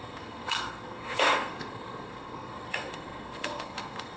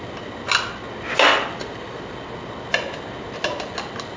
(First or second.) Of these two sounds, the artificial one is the first